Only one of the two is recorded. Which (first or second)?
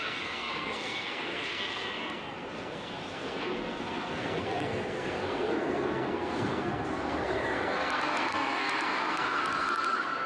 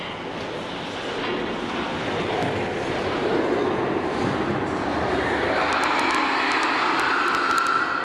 second